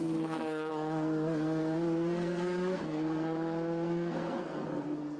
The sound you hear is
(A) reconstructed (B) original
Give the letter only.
A